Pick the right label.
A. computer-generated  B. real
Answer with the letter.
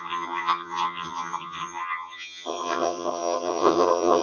A